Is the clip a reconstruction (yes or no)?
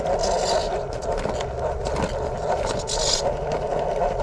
no